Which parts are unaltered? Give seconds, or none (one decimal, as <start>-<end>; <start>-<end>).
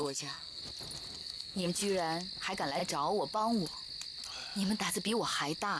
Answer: 0.6-1.2; 1.7-5.8